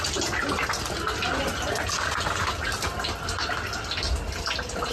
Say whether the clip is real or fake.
real